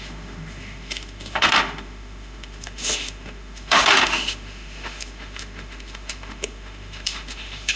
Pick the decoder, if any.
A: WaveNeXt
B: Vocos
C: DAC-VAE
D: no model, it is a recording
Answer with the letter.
C